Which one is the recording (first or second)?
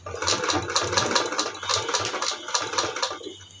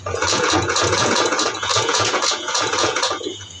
first